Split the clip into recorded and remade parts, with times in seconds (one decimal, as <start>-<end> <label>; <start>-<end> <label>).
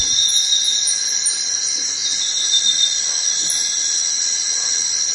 0.0-5.1 recorded